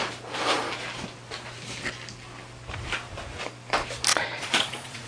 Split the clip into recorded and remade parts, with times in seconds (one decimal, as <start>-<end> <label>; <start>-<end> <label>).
0.0-4.1 recorded; 4.1-5.1 remade